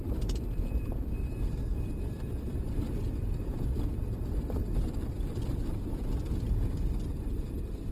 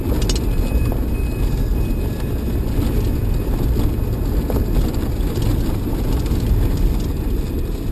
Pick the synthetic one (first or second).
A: first